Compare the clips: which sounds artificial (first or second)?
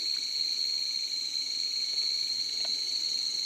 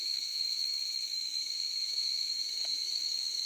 second